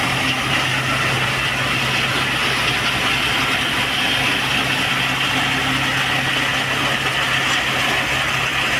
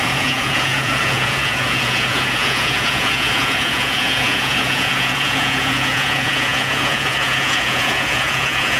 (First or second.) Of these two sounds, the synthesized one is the second